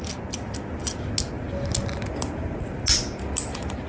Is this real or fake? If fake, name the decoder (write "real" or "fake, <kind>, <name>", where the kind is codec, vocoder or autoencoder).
real